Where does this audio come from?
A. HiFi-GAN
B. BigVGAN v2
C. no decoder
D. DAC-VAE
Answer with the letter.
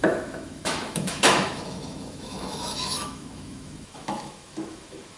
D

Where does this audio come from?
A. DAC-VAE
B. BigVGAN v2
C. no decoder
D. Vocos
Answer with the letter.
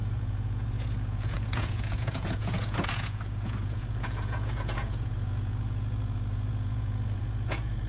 D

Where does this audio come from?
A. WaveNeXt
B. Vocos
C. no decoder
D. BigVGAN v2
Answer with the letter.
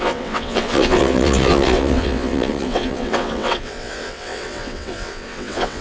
A